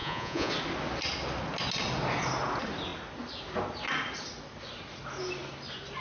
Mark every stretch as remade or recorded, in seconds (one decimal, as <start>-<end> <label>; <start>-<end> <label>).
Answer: 0.0-0.5 remade; 0.5-6.0 recorded